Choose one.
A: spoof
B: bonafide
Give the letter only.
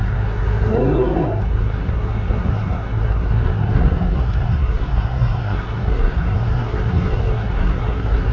A